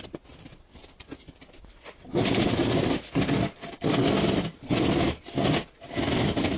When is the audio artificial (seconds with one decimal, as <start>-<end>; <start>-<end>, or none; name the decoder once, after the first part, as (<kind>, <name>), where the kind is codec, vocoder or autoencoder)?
none